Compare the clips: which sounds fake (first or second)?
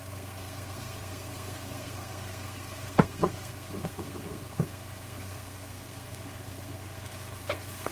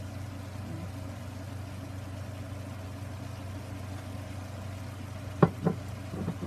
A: first